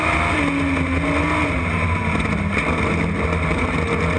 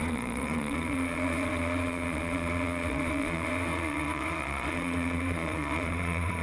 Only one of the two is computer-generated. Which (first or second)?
second